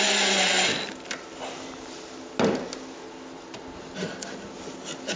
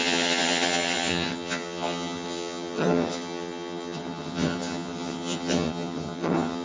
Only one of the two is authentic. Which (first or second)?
first